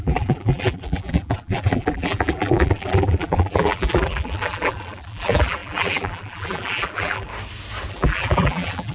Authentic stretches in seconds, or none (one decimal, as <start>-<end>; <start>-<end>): 7.3-7.9